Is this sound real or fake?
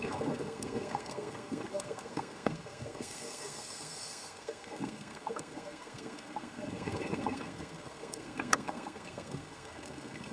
fake